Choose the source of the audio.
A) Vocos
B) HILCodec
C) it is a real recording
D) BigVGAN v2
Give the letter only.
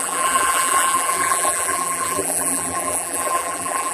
D